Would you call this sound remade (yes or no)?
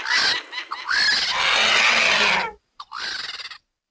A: no